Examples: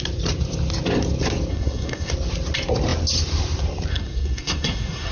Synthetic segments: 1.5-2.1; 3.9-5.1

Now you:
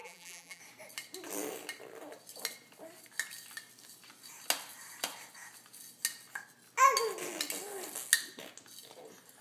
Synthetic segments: 0.0-0.6